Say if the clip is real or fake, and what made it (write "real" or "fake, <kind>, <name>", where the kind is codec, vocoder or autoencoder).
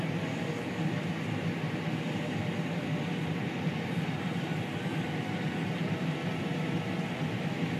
real